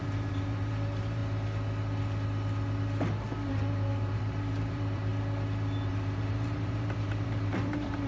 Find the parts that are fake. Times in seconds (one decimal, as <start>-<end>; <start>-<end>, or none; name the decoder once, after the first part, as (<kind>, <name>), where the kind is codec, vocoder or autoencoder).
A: 0.0-1.2 (vocoder, BigVGAN v2); 3.5-5.1; 5.9-8.1